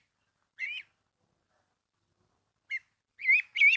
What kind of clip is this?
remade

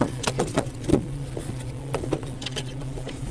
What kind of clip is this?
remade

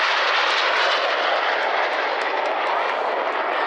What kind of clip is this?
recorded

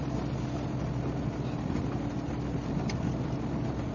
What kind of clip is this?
recorded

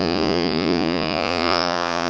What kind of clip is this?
remade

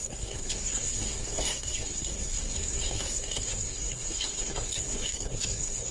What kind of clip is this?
remade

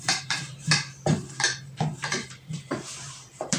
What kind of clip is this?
remade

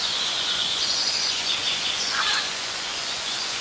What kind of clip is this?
remade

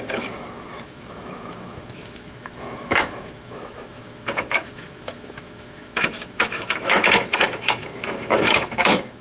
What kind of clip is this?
remade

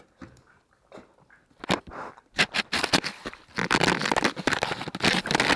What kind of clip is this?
recorded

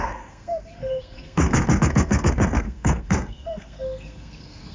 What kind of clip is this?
remade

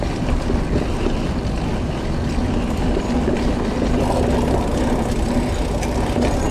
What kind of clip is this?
recorded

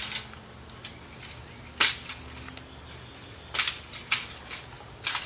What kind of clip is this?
recorded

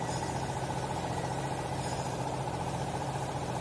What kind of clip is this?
remade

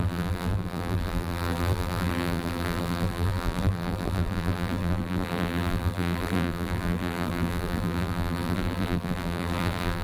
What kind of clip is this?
remade